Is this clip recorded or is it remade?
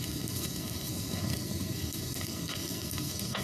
remade